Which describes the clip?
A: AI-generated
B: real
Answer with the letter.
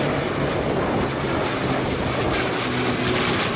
B